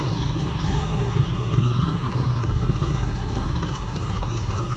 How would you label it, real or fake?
fake